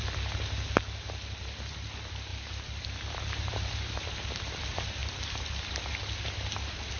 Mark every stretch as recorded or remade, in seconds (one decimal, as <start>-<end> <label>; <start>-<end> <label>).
0.0-2.3 recorded; 2.3-4.0 remade; 4.0-5.0 recorded; 5.0-5.8 remade; 5.8-7.0 recorded

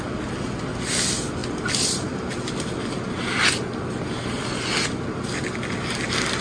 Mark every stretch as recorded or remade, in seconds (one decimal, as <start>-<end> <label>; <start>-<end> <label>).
0.0-1.4 recorded; 1.4-2.7 remade; 2.7-6.4 recorded